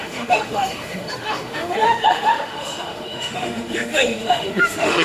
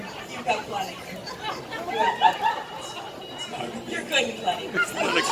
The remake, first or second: first